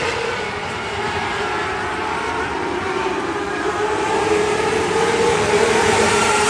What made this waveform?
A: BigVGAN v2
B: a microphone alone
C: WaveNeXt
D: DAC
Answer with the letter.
A